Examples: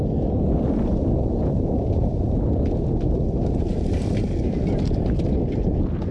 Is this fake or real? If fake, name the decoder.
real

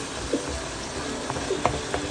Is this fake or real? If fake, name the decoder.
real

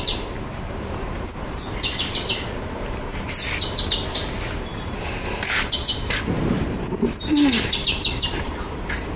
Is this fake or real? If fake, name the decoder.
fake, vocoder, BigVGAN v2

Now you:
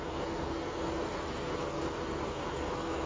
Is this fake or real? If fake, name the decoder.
real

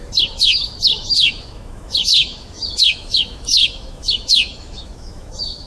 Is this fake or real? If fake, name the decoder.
fake, autoencoder, DAC-VAE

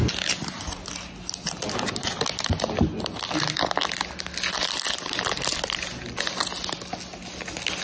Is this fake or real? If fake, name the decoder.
real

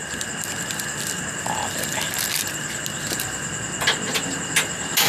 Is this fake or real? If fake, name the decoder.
real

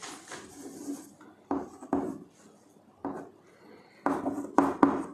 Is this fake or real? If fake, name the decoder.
real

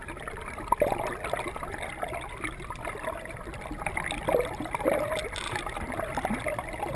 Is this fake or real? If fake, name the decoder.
real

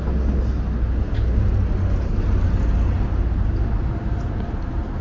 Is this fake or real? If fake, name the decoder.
real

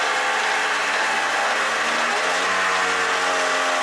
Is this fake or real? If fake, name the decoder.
real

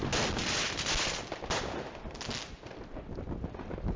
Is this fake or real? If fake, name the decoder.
real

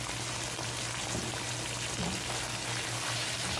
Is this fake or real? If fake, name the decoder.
real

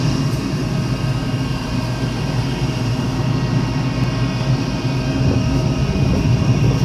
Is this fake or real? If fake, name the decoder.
real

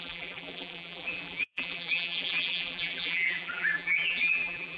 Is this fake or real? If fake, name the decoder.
fake, vocoder, BigVGAN v2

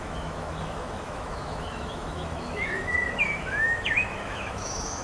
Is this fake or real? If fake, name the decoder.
fake, autoencoder, DAC-VAE